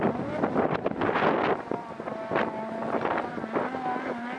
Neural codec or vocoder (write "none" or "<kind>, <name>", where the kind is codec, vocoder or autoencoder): none